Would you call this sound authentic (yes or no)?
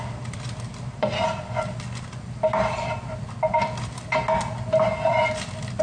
yes